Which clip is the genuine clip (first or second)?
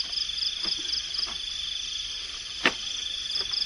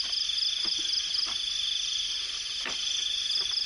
second